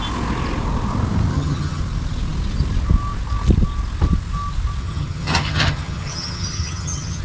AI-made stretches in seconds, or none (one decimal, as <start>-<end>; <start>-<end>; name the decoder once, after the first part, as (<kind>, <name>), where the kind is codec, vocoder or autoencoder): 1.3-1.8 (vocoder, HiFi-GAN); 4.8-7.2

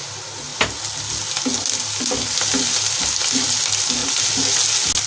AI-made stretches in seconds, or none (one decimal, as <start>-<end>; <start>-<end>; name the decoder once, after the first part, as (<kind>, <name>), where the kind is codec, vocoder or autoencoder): none

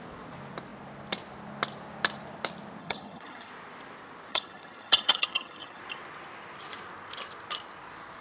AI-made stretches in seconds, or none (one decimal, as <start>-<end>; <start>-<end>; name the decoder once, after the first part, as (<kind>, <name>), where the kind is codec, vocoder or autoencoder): 2.8-3.5 (vocoder, HiFi-GAN); 4.3-5.8

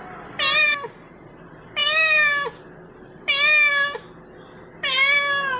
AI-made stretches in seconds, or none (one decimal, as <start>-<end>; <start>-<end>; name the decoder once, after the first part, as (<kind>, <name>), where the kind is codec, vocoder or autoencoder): none

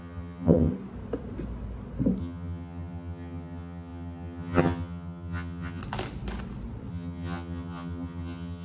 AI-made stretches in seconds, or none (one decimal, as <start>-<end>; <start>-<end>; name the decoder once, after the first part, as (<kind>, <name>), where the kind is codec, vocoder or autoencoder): 0.0-0.7 (vocoder, HiFi-GAN); 2.2-5.8; 6.9-8.6